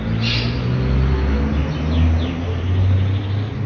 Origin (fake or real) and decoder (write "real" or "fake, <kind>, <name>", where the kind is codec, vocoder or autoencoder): real